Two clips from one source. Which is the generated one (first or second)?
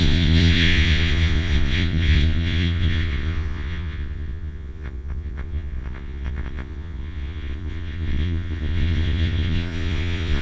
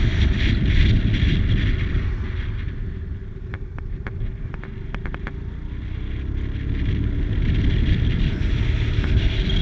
first